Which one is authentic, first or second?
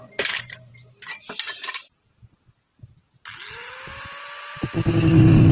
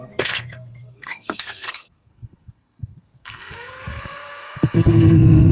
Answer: first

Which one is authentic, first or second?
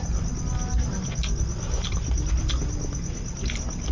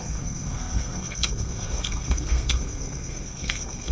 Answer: first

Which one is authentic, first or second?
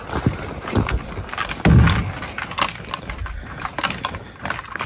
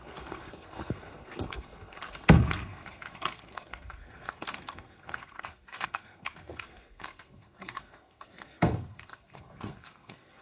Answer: first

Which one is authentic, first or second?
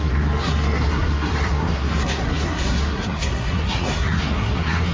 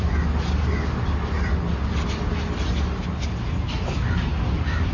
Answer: second